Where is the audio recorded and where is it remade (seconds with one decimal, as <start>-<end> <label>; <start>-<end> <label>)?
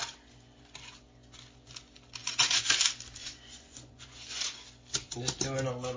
0.0-2.2 recorded; 2.2-2.7 remade; 2.7-3.2 recorded; 3.2-4.4 remade; 4.4-6.0 recorded